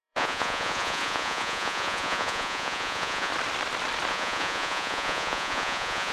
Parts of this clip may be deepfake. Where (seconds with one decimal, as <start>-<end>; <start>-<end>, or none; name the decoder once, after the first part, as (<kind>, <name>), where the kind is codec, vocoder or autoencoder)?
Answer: 0.0-3.3 (vocoder, Vocos); 4.1-6.1